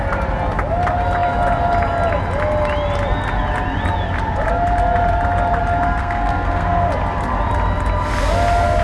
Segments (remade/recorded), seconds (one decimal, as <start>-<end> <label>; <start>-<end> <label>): 0.0-6.0 recorded; 6.0-6.9 remade; 6.9-8.8 recorded